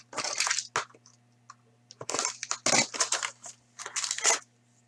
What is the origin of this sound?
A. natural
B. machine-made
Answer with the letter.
A